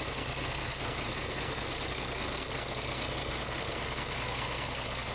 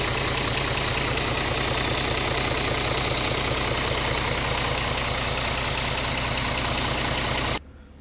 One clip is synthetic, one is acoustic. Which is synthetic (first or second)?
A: first